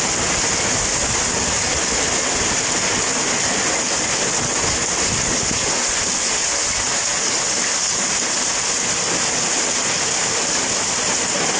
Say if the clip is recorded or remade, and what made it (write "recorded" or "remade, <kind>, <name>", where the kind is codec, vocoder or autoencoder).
recorded